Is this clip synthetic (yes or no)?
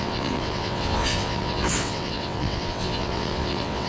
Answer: yes